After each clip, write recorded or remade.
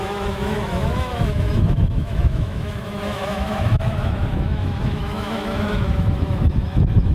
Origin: remade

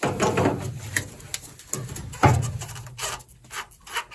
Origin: recorded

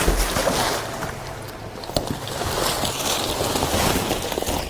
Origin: recorded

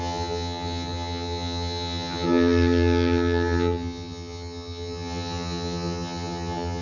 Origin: remade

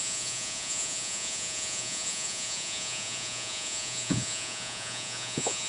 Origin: remade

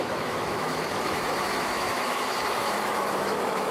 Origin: remade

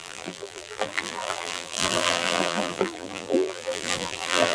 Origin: remade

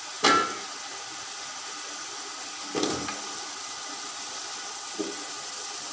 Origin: recorded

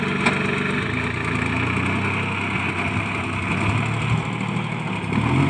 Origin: recorded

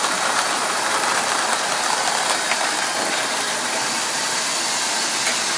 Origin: recorded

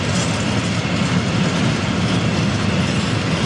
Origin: recorded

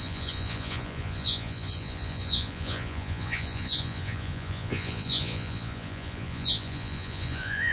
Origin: remade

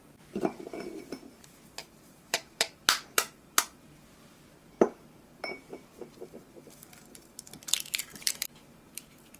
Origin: remade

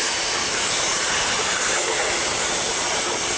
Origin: remade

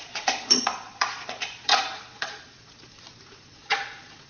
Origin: remade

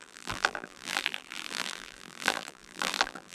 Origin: remade